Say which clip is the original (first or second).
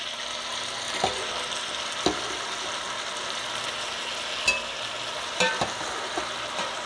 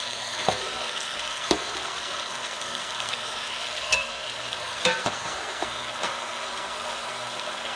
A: first